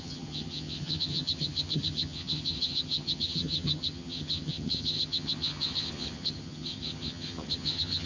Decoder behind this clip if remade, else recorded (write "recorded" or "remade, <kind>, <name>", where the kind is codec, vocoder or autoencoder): remade, vocoder, HiFi-GAN